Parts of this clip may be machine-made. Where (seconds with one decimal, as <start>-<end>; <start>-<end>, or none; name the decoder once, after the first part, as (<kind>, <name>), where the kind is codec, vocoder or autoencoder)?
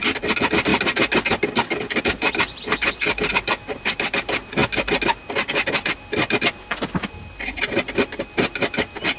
none